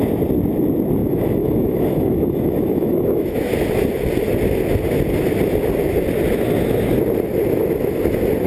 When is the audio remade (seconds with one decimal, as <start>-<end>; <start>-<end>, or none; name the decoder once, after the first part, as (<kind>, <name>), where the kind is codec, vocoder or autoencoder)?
1.0-3.4 (autoencoder, DAC-VAE)